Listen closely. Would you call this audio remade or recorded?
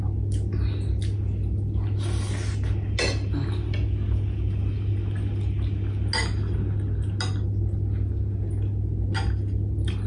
recorded